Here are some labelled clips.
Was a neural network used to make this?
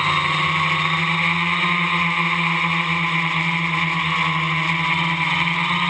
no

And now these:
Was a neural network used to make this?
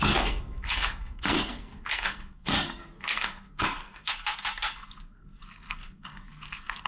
yes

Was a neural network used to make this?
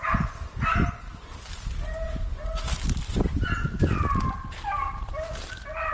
no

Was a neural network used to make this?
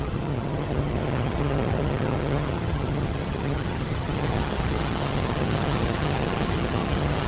yes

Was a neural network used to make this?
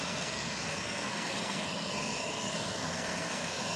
yes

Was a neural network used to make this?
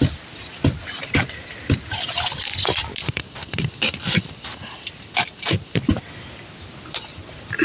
no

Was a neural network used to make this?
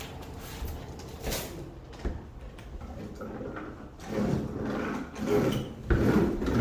no